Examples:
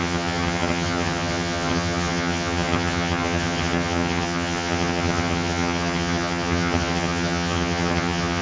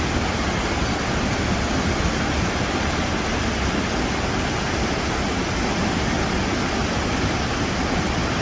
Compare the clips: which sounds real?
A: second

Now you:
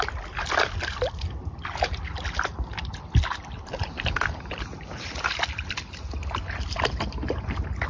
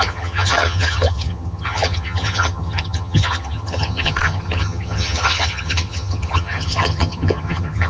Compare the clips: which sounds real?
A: first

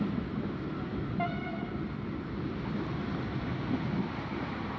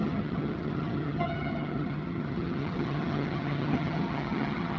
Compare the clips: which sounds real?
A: first